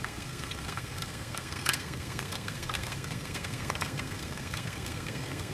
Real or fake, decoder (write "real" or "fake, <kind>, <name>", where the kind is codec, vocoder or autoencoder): fake, codec, SNAC